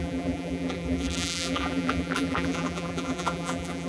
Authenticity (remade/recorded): remade